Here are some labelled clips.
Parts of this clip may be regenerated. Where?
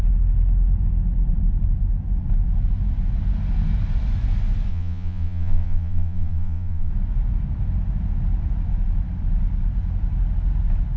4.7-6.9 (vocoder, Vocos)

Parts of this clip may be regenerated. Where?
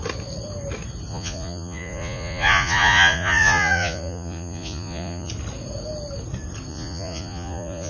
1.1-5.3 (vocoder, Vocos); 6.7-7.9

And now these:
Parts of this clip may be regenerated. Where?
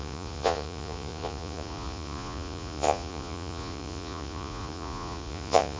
0.0-5.8 (vocoder, Vocos)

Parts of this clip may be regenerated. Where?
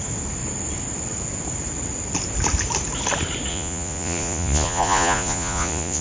3.5-6.0 (vocoder, Vocos)